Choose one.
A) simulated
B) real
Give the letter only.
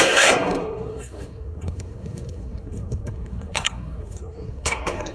A